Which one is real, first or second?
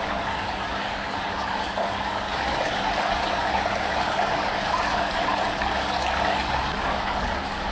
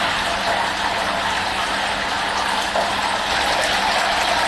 second